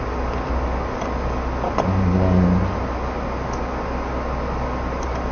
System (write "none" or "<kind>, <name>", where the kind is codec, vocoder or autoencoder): none